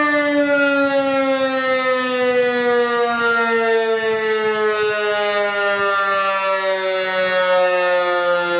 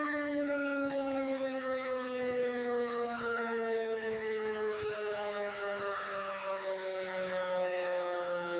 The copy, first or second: second